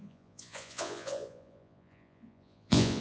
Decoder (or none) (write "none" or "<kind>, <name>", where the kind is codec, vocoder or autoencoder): vocoder, Vocos